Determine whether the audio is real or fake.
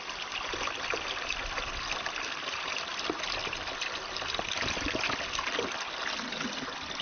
real